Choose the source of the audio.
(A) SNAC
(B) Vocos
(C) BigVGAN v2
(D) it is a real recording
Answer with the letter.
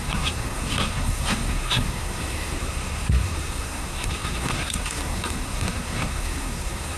A